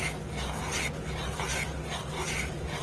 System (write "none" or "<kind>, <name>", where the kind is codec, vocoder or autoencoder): none